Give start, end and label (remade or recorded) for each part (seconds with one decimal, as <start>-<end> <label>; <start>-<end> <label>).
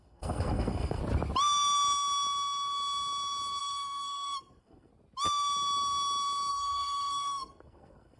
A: 0.0-1.0 remade; 1.0-3.6 recorded; 3.6-4.9 remade; 4.9-6.5 recorded; 6.5-8.2 remade